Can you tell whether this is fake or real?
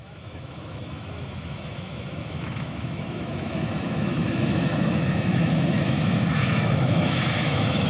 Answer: fake